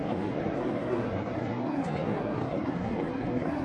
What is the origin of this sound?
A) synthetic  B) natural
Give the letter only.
A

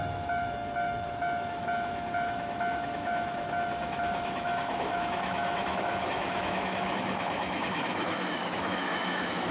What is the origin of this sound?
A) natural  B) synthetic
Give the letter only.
B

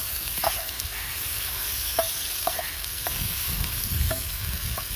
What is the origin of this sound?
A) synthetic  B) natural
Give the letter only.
A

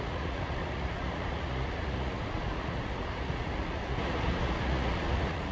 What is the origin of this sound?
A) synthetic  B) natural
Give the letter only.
A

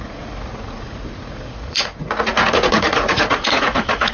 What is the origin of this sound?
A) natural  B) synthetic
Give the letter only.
B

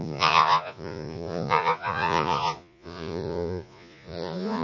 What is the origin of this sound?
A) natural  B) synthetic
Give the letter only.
B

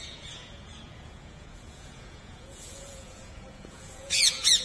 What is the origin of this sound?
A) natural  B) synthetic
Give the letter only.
B